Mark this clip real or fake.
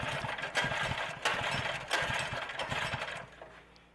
real